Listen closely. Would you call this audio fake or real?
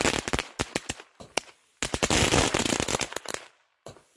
real